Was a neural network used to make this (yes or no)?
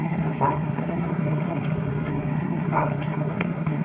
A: yes